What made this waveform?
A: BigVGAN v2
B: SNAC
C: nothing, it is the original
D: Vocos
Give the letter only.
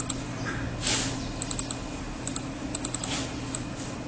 C